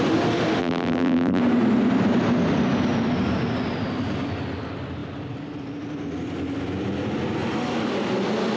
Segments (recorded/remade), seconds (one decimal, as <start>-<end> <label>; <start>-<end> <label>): 0.0-0.6 recorded; 0.6-1.4 remade; 1.4-8.6 recorded